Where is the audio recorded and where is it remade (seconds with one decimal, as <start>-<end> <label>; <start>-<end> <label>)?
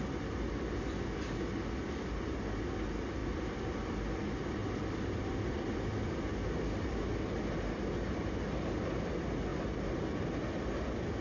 0.0-3.2 recorded; 3.2-3.8 remade; 3.8-4.6 recorded; 4.6-6.6 remade; 6.6-9.5 recorded; 9.5-10.5 remade; 10.5-11.2 recorded